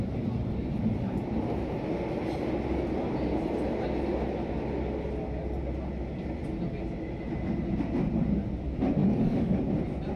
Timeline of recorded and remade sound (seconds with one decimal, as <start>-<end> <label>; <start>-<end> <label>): 0.0-9.0 recorded; 9.0-9.6 remade; 9.6-10.2 recorded